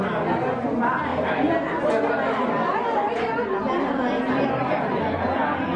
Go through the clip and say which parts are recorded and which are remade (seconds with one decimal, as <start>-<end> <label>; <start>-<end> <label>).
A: 0.0-5.8 recorded